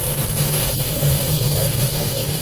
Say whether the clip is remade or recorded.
remade